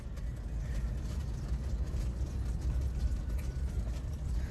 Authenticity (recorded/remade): recorded